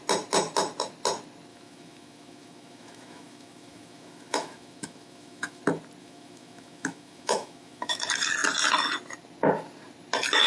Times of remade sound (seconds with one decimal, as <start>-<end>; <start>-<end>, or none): 1.5-5.6; 6.0-8.0